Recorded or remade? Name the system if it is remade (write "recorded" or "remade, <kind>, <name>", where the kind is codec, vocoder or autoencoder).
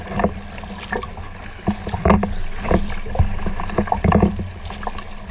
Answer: recorded